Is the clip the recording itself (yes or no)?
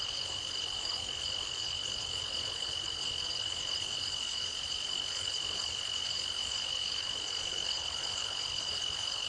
no